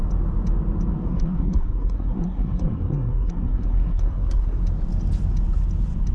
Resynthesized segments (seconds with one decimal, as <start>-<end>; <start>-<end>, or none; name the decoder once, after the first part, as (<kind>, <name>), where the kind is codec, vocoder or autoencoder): 1.0-4.6 (codec, SNAC)